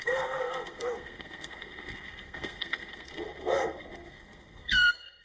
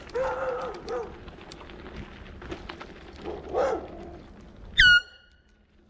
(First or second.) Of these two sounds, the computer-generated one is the first